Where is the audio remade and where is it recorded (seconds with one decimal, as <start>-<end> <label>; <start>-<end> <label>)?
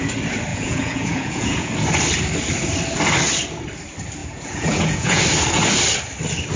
0.0-0.5 recorded; 0.5-1.7 remade; 1.7-4.2 recorded; 4.2-5.2 remade; 5.2-6.6 recorded